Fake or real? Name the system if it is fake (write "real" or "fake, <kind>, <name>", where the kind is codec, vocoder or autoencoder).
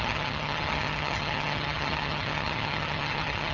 fake, vocoder, HiFi-GAN